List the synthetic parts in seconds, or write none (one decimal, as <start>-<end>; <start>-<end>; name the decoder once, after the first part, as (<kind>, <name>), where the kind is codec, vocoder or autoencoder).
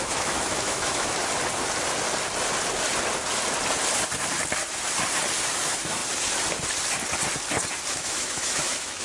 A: 0.0-1.2 (autoencoder, DAC-VAE); 5.5-6.0; 7.9-9.0